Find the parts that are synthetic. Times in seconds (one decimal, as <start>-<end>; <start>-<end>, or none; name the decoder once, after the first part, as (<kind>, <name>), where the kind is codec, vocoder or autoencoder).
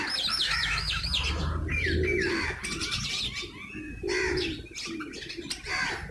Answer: 0.4-1.1 (autoencoder, DAC-VAE)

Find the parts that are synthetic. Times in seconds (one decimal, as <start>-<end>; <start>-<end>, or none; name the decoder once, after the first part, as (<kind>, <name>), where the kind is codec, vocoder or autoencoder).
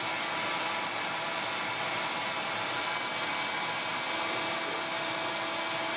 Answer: none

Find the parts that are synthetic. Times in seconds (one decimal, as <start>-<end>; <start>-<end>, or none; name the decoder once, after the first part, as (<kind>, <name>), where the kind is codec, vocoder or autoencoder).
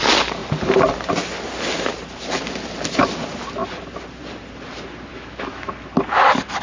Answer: 5.1-5.7 (autoencoder, DAC-VAE)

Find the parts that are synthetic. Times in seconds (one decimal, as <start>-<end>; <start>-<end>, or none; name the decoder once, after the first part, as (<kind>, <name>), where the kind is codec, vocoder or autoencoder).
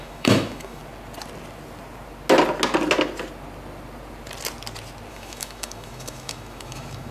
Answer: 0.0-0.8 (autoencoder, DAC-VAE); 5.1-7.1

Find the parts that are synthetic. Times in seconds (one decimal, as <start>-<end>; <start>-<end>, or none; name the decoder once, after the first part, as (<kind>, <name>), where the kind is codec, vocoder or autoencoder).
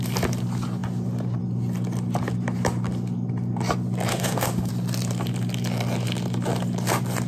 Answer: 4.1-4.7 (autoencoder, DAC-VAE)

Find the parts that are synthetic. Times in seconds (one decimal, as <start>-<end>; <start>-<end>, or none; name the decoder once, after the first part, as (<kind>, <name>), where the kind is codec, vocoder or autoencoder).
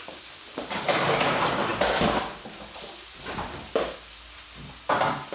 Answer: none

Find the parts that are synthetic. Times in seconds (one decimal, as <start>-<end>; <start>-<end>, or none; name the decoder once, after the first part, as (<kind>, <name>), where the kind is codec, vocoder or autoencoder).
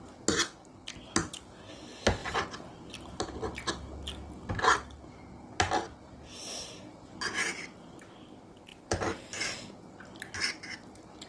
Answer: none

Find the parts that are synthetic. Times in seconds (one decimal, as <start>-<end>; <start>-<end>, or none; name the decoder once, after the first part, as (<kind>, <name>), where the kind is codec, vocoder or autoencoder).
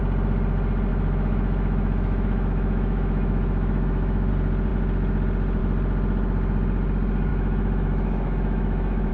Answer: 0.9-4.3 (autoencoder, DAC-VAE); 7.3-9.1